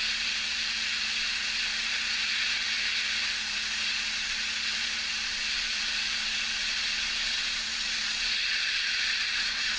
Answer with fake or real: fake